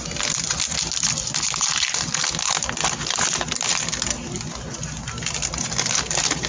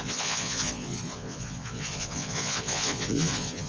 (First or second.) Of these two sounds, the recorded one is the first